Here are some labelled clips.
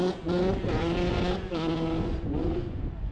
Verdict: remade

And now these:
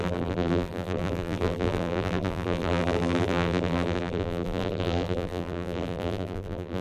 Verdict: remade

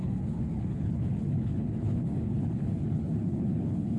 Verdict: remade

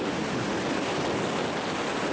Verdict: recorded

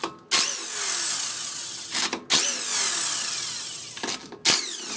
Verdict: recorded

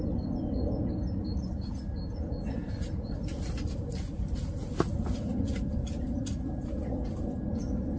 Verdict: recorded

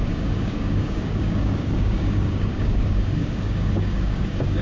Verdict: remade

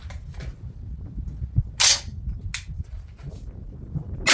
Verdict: recorded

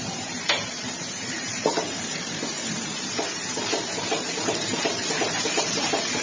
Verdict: remade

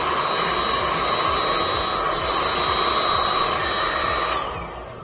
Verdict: recorded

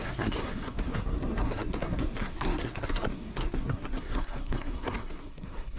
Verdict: remade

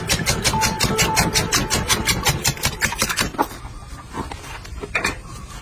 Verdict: recorded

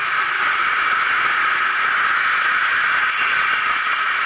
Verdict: recorded